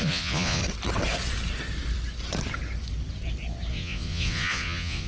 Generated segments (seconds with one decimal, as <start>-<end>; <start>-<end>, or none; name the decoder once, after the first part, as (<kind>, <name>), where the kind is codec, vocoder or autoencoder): 0.0-0.6 (vocoder, Vocos); 3.7-5.1